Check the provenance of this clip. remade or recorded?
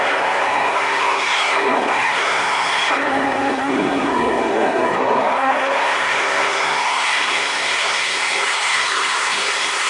remade